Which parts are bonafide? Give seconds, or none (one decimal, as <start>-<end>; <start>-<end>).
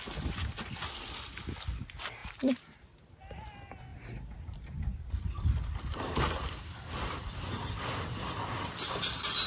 0.0-2.2; 3.1-3.9; 7.7-9.5